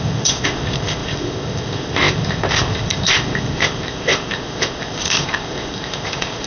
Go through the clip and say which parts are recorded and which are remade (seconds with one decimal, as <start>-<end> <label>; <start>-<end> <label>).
0.0-6.5 remade